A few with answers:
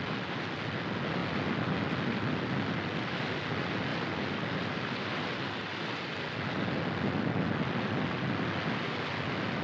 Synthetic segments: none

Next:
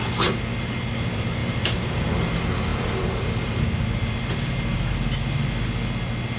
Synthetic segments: 1.4-2.1; 2.7-3.6

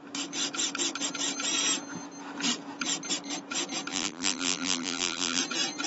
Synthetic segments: 3.9-5.4